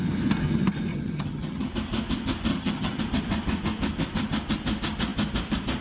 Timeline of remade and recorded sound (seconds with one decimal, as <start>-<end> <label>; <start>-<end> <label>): 0.0-0.9 recorded; 0.9-1.7 remade; 1.7-2.5 recorded; 2.5-3.0 remade; 3.0-5.8 recorded